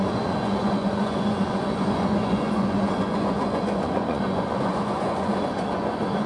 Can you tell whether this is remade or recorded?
remade